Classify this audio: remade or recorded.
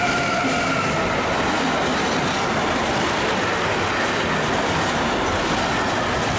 recorded